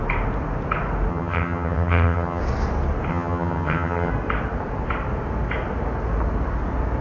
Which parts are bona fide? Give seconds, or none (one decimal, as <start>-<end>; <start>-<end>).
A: 0.0-1.1; 2.4-3.1; 4.1-7.0